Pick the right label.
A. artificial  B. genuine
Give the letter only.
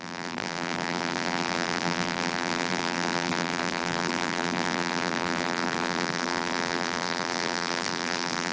A